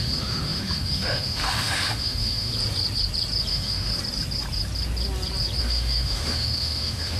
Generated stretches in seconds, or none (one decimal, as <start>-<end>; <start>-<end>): 0.0-2.5; 3.5-3.9; 5.6-7.2